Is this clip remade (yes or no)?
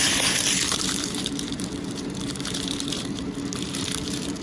yes